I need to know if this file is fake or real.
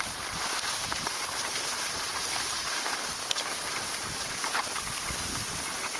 real